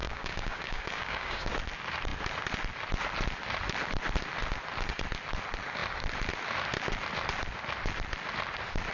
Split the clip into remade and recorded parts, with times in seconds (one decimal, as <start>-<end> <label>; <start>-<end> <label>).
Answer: 0.0-1.5 remade; 1.5-8.9 recorded